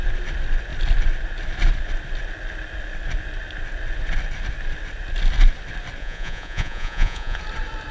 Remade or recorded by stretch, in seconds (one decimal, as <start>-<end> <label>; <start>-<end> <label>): 0.0-6.0 recorded; 6.0-7.4 remade; 7.4-7.9 recorded